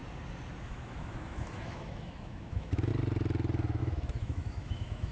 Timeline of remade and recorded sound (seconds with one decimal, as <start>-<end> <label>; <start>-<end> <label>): 0.0-0.6 recorded; 0.6-2.9 remade; 2.9-3.8 recorded; 3.8-5.1 remade